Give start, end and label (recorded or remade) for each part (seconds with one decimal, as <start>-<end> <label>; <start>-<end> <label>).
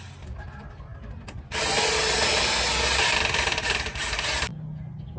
0.0-5.2 recorded